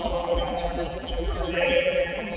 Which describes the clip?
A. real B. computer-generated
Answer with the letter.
B